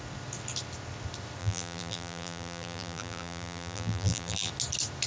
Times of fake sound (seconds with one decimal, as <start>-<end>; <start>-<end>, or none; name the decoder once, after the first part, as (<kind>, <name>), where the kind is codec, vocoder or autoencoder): 1.4-4.5 (vocoder, BigVGAN v2)